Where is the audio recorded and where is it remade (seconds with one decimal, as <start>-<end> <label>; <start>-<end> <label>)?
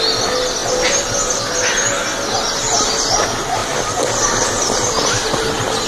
0.0-5.9 recorded